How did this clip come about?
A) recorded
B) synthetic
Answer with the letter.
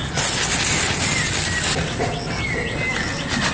A